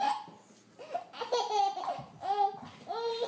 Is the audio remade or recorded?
recorded